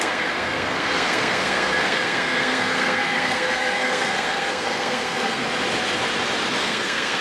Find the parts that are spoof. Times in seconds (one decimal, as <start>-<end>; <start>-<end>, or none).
0.0-5.4; 6.6-7.2